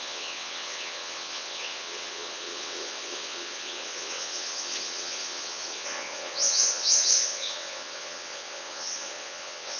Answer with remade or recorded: remade